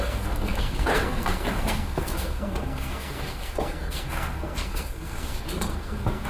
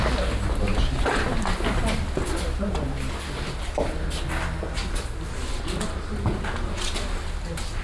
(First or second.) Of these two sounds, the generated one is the first